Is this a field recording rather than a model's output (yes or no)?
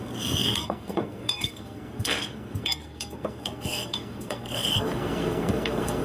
no